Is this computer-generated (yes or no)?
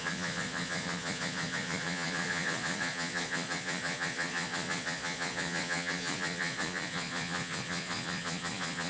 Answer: yes